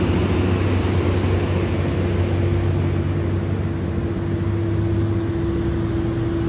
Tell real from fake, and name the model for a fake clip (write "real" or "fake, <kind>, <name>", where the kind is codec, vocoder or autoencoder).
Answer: real